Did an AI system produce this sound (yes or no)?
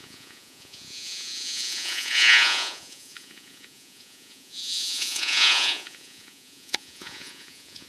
yes